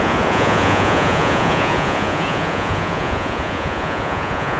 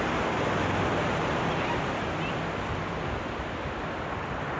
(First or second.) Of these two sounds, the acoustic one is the second